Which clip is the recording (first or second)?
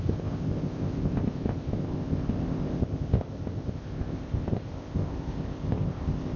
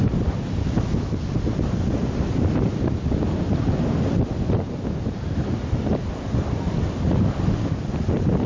second